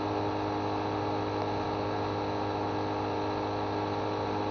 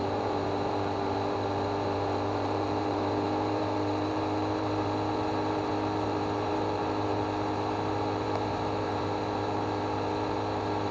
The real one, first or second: first